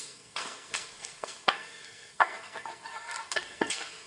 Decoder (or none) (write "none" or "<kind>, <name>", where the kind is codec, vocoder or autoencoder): codec, SNAC